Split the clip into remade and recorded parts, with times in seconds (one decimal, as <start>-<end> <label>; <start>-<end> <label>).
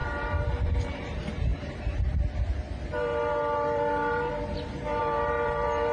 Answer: 0.0-5.9 remade